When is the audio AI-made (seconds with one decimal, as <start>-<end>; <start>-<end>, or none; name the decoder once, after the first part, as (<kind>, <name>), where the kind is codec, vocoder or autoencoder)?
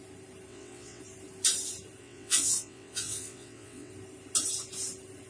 0.5-1.0 (vocoder, WaveNeXt); 2.0-3.9